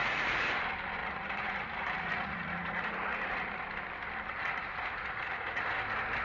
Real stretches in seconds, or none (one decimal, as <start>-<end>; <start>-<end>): 0.6-1.0; 3.7-4.4; 5.6-6.2